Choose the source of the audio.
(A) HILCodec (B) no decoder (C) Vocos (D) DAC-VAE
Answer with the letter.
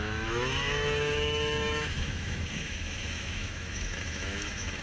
D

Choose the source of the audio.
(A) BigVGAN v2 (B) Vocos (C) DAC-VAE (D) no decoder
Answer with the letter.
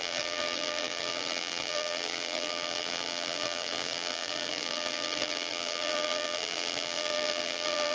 A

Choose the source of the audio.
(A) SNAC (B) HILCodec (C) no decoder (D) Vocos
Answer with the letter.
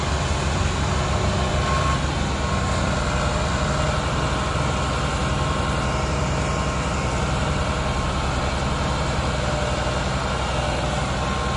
C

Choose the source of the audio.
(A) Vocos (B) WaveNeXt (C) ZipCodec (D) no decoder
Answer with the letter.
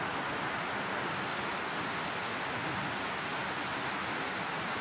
D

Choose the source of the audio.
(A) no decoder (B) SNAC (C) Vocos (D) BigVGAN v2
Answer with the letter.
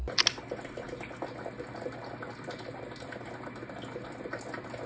A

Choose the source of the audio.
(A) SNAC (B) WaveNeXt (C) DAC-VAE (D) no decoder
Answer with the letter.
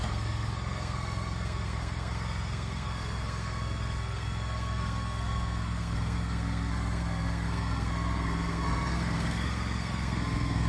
A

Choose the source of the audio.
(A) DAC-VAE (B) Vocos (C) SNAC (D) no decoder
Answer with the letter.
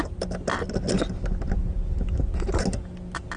D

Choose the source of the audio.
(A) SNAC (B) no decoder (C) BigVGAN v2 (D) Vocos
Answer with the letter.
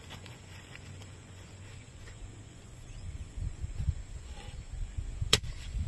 D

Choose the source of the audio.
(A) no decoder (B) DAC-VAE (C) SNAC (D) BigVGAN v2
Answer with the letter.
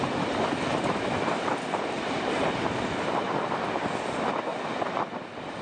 A